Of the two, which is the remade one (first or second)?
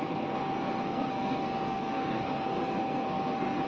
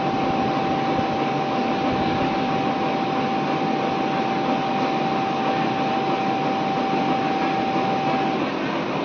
first